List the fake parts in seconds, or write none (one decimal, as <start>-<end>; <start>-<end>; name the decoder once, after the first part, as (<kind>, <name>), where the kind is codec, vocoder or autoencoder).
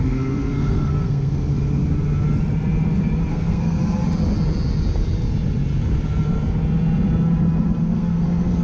0.0-1.5 (codec, SNAC); 3.3-3.8; 7.8-8.6